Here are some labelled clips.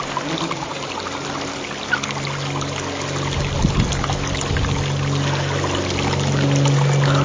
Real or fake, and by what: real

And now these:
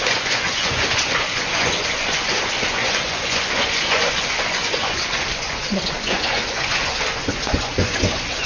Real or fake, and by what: fake, vocoder, Vocos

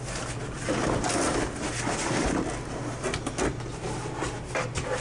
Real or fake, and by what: real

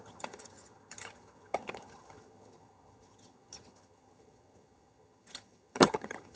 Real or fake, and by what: fake, vocoder, HiFi-GAN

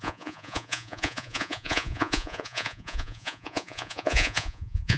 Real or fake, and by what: fake, vocoder, Vocos